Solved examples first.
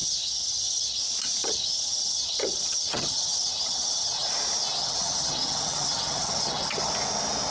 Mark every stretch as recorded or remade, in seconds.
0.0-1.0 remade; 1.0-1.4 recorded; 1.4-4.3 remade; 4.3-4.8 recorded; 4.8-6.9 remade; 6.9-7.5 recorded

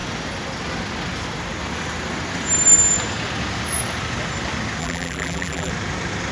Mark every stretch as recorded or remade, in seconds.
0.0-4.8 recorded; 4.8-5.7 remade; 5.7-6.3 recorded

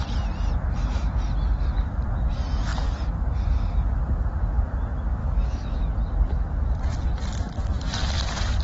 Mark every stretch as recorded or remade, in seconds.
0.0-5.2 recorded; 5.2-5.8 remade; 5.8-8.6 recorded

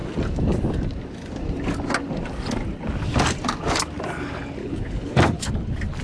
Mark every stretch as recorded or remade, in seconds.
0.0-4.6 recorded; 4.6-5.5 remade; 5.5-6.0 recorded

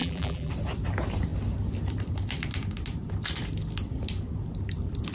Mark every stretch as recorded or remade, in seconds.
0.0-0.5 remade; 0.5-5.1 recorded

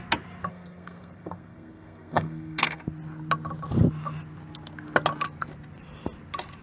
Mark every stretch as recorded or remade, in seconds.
0.0-0.5 recorded; 0.5-2.8 remade; 2.8-6.6 recorded